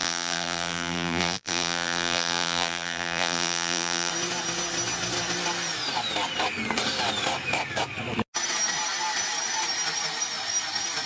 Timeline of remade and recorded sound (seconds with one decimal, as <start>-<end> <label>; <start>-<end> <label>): 0.0-4.1 remade; 4.1-11.1 recorded